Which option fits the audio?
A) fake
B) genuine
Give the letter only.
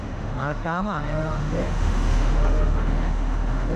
A